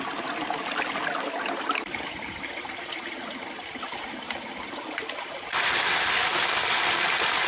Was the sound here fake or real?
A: real